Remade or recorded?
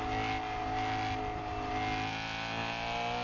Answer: recorded